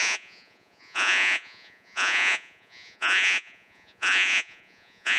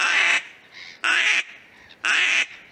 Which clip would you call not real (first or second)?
first